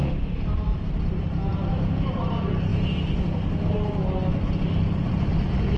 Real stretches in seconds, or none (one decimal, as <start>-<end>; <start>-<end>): 0.9-5.8